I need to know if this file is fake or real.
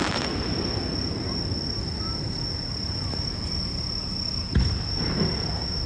real